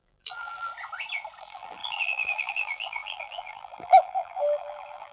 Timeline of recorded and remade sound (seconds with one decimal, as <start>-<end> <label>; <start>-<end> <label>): 0.0-0.7 remade; 0.7-1.4 recorded; 1.4-5.1 remade